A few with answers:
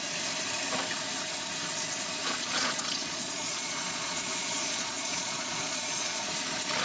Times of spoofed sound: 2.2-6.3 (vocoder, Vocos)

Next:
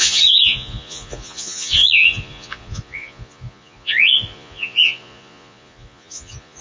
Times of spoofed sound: 0.0-6.6 (vocoder, Vocos)

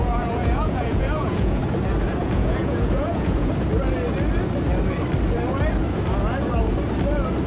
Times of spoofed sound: 0.0-1.6 (vocoder, Vocos); 2.2-3.5